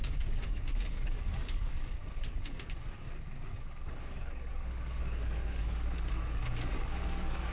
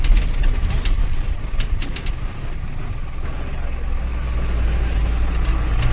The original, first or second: second